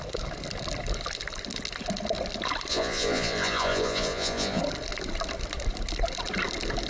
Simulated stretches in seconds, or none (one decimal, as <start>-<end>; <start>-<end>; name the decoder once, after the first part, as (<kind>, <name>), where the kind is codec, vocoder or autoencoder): 2.7-4.6 (vocoder, Vocos)